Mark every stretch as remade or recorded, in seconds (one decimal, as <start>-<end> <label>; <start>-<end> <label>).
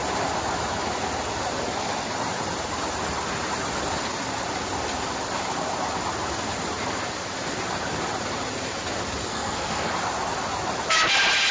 0.0-9.3 recorded; 9.3-9.9 remade; 9.9-11.5 recorded